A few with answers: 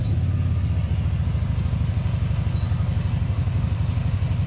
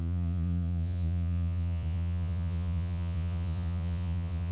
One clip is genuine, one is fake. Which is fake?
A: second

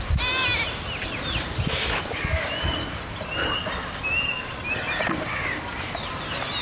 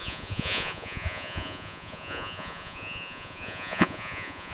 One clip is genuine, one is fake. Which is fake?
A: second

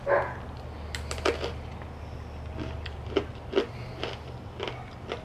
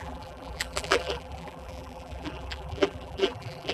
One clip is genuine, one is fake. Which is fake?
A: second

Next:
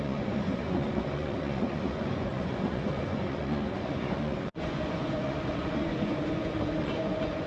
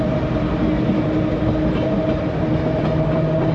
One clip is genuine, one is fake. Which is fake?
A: first